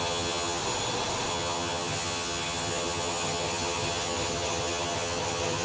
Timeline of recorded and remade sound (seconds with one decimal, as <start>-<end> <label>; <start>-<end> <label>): 0.0-0.6 remade; 0.6-1.3 recorded; 1.3-5.6 remade